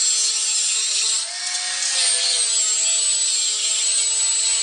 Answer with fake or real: real